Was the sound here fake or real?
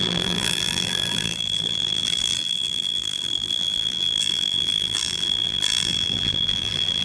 fake